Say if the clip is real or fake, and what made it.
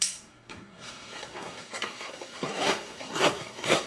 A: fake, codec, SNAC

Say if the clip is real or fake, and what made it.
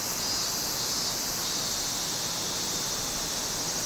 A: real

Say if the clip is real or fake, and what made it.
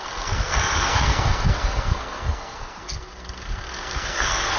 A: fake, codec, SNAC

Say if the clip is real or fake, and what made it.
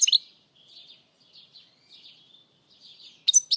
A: real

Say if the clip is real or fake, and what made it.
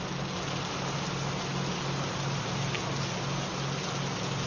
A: real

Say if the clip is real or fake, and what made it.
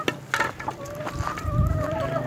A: real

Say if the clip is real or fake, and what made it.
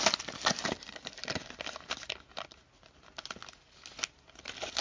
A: real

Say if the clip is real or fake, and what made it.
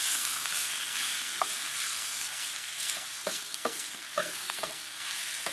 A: fake, codec, SNAC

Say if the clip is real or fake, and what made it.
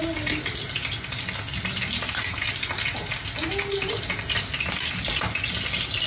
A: real